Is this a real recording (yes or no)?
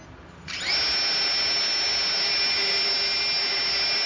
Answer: yes